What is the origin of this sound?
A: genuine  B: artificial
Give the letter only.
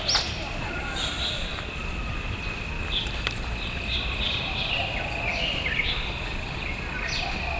A